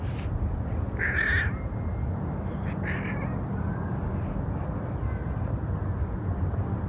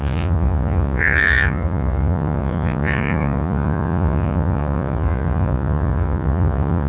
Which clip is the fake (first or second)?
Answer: second